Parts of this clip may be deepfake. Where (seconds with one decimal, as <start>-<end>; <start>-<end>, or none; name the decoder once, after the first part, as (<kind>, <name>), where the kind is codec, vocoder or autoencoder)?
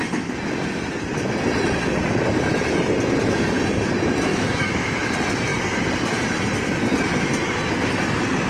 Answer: 4.3-5.1 (autoencoder, DAC-VAE)